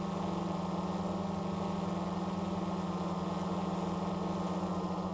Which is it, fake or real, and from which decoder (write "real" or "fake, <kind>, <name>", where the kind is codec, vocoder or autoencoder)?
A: real